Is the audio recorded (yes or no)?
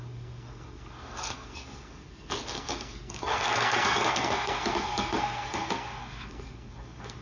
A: no